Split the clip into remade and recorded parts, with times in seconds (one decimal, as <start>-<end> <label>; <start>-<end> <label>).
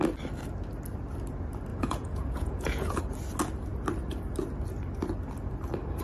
0.0-1.7 recorded; 1.7-3.0 remade; 3.0-6.0 recorded